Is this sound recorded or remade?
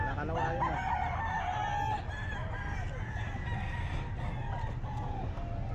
recorded